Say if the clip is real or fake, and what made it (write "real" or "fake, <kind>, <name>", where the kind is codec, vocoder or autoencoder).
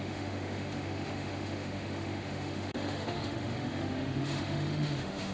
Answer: fake, autoencoder, DAC-VAE